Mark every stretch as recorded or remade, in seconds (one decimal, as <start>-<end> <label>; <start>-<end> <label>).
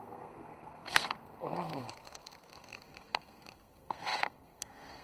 0.0-5.0 remade